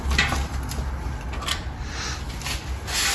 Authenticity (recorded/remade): recorded